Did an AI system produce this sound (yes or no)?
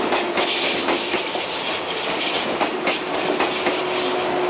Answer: no